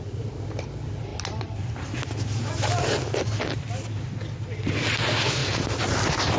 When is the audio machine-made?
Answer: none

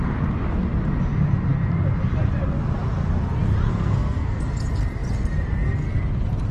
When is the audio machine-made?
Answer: 3.7-4.4 (codec, SNAC)

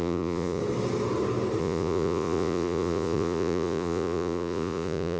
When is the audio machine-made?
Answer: 0.0-0.6 (vocoder, Vocos); 1.6-5.2

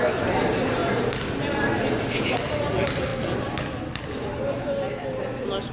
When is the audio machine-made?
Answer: none

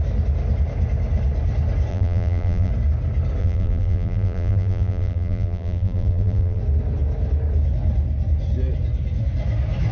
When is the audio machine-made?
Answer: 1.9-2.7 (vocoder, BigVGAN v2); 3.4-6.6